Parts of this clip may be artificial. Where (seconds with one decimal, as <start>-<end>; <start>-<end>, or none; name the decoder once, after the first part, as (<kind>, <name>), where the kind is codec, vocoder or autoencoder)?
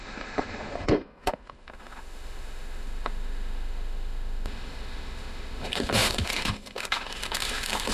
0.0-7.9 (autoencoder, DAC-VAE)